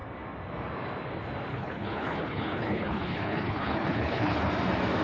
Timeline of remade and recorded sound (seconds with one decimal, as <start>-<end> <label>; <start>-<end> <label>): 0.0-1.5 recorded; 1.5-4.5 remade; 4.5-5.0 recorded